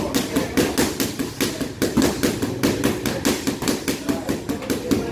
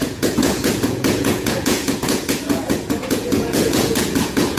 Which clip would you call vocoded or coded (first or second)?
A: second